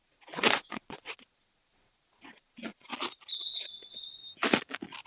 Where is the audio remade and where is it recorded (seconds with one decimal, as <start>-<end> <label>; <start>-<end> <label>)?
0.0-2.9 remade; 2.9-3.4 recorded; 3.4-4.2 remade; 4.2-5.1 recorded